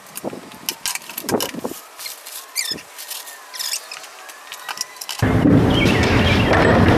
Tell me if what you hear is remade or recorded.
recorded